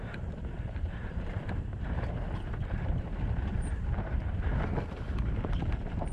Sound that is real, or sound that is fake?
fake